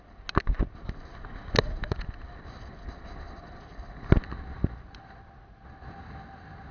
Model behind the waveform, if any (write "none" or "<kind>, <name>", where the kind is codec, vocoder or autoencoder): none